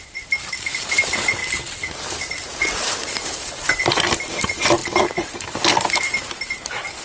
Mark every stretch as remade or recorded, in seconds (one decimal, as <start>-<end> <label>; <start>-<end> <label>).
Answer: 0.0-1.4 remade; 1.4-2.5 recorded; 2.5-7.0 remade